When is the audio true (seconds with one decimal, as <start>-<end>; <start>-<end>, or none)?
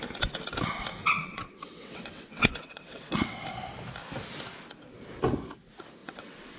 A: 0.0-1.0; 3.4-6.0